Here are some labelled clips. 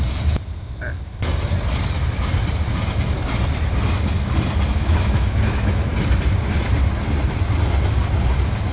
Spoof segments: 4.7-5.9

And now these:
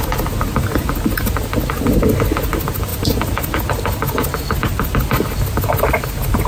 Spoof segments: none

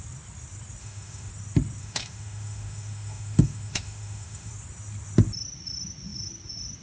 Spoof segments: 0.8-1.3; 1.8-4.5